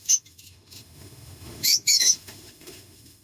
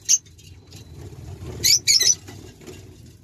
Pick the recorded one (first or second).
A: second